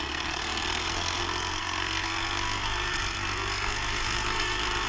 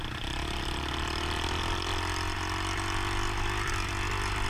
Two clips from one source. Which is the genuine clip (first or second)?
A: second